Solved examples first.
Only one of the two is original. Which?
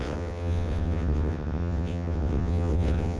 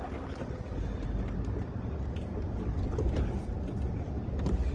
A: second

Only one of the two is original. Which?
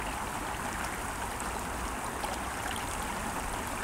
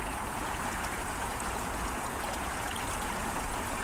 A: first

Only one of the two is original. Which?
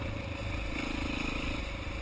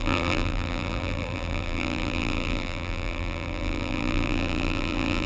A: first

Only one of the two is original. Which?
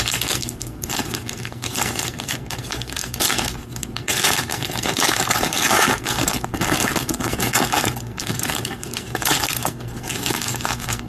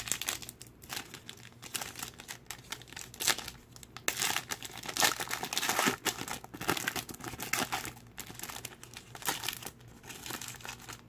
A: second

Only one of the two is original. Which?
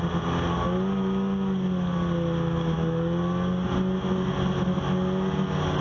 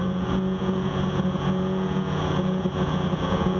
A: first